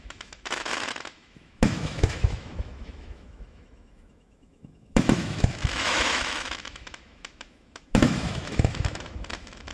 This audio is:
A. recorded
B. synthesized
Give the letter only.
B